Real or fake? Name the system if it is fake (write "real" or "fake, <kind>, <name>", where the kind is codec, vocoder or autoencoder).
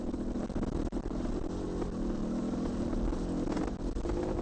real